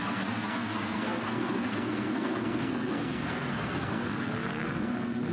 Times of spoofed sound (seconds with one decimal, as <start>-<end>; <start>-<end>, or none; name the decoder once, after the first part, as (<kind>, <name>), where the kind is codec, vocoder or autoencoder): 0.0-5.3 (codec, SNAC)